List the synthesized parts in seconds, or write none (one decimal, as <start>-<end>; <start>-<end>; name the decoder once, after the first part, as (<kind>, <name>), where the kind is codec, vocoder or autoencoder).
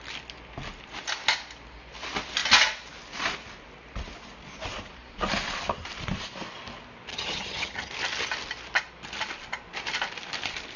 7.1-7.9 (vocoder, HiFi-GAN)